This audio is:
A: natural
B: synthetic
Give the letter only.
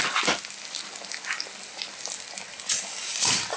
A